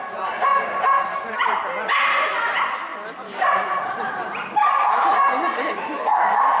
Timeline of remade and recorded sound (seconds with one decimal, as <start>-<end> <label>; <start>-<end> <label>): 0.0-0.5 recorded; 0.5-1.3 remade; 1.3-2.9 recorded; 2.9-4.7 remade; 4.7-6.6 recorded